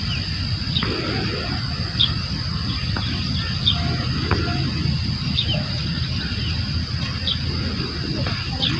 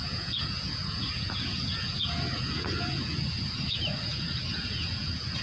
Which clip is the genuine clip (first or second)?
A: first